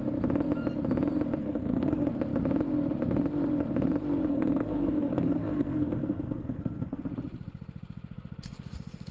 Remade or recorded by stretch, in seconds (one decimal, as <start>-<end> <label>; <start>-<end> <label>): 0.0-1.4 recorded; 1.4-2.1 remade; 2.1-4.3 recorded; 4.3-7.0 remade; 7.0-9.1 recorded